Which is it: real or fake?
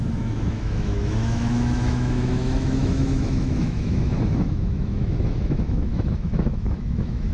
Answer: fake